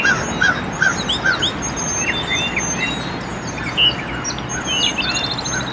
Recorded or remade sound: recorded